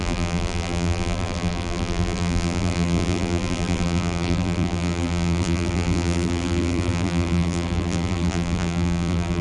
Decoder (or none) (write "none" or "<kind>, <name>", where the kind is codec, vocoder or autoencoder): vocoder, BigVGAN v2